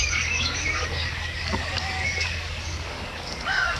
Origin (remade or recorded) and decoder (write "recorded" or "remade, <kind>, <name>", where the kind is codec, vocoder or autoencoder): remade, codec, DAC